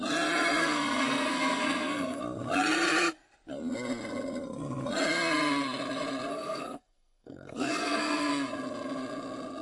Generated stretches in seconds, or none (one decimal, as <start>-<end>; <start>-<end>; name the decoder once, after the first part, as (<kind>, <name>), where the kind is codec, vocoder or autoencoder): 0.6-2.2 (codec, SNAC); 6.3-8.3